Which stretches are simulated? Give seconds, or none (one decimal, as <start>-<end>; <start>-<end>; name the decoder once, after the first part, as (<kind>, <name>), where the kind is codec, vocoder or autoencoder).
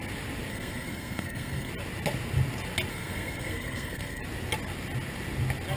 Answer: 0.5-1.7 (codec, SNAC); 2.9-4.2